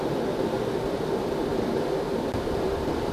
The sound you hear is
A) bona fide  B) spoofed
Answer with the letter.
B